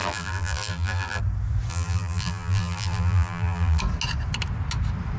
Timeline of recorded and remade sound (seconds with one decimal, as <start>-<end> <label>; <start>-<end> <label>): 0.0-1.2 remade; 1.2-1.7 recorded; 1.7-3.8 remade; 3.8-5.2 recorded